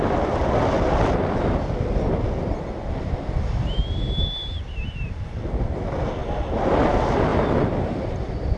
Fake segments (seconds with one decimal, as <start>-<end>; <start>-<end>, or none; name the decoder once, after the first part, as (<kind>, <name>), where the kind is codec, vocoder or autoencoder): 7.3-8.6 (vocoder, BigVGAN v2)